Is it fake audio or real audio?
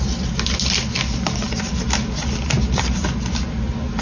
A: real